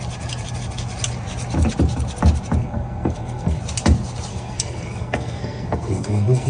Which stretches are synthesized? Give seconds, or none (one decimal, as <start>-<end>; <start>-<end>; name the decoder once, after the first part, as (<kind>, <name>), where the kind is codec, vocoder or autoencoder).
2.6-3.6 (codec, SNAC); 4.3-6.5